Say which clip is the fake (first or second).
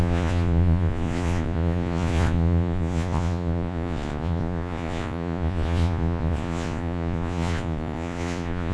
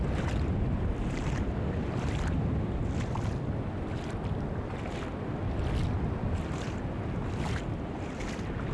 first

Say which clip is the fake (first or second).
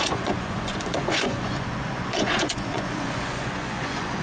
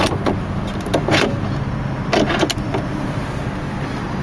first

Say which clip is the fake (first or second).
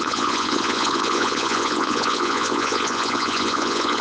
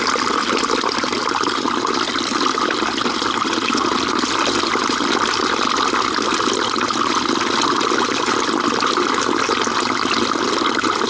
first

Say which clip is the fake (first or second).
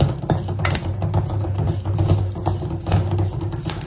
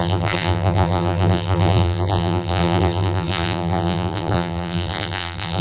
second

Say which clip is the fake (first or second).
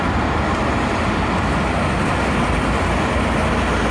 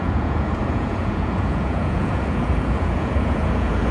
second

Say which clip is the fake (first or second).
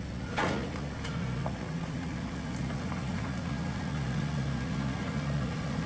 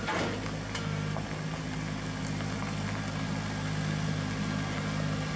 first